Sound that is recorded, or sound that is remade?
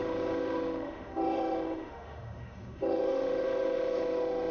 remade